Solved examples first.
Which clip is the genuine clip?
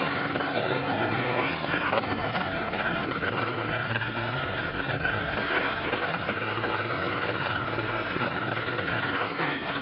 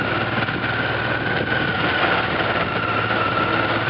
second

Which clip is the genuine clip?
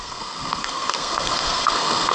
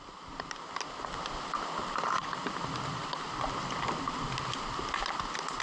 second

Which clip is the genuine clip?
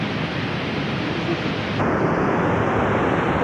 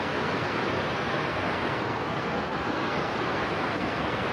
first